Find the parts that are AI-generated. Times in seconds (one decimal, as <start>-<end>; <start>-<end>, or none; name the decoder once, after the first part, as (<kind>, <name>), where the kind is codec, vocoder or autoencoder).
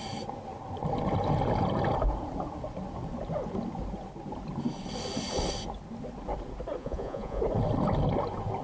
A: 6.8-7.4 (vocoder, Vocos)